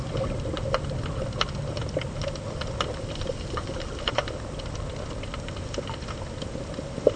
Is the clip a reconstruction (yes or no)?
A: no